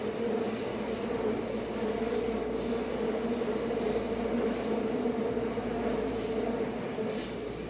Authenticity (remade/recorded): recorded